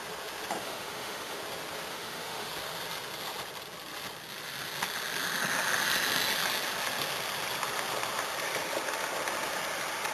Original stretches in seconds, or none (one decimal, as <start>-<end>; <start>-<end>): 0.0-0.6; 1.4-1.9; 2.5-10.1